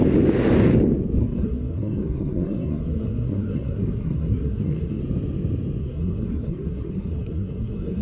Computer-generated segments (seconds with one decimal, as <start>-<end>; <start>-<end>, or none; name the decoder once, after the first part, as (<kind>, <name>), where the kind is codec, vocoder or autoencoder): 1.2-5.0 (codec, SNAC); 5.8-8.0